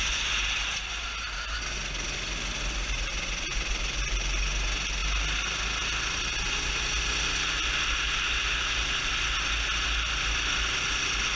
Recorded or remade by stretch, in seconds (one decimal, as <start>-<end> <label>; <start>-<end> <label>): 0.0-11.3 recorded